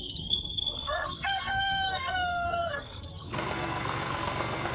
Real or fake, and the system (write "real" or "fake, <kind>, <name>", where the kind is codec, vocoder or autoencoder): fake, codec, SNAC